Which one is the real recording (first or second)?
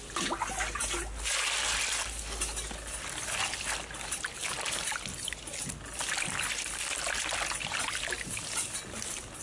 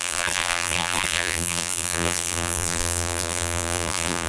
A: first